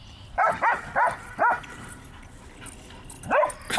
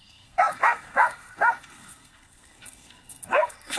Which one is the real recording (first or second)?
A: first